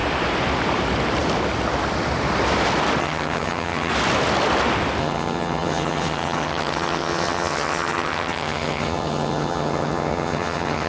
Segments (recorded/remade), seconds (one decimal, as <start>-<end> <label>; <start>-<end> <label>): 0.0-3.0 recorded; 3.0-3.9 remade; 3.9-5.0 recorded; 5.0-10.9 remade

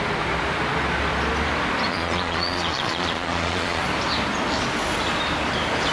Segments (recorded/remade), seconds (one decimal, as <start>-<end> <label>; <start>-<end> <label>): 0.0-1.9 recorded; 1.9-3.8 remade; 3.8-5.9 recorded

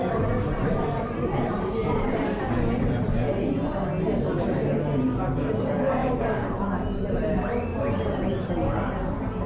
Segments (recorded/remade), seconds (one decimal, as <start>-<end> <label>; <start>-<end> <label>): 0.0-6.0 recorded; 6.0-7.3 remade; 7.3-7.7 recorded; 7.7-8.5 remade; 8.5-9.5 recorded

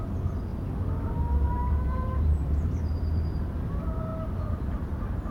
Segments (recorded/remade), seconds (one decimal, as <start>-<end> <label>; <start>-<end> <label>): 0.0-0.5 remade; 0.5-1.6 recorded; 1.6-5.3 remade